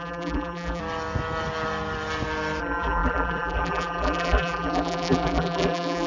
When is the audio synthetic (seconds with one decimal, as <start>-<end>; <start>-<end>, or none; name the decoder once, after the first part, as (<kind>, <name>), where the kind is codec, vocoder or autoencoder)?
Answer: 0.0-0.8 (vocoder, BigVGAN v2); 2.6-6.1